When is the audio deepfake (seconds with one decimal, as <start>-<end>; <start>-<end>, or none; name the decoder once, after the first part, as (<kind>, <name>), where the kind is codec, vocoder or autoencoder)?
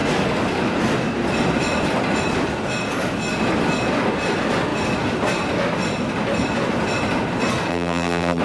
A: 7.7-8.4 (vocoder, BigVGAN v2)